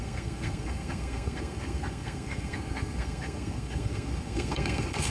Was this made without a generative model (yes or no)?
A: no